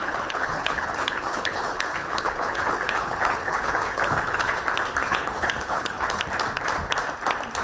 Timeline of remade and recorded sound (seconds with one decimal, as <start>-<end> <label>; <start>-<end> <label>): 0.0-4.6 remade; 4.6-5.0 recorded; 5.0-6.2 remade; 6.2-7.6 recorded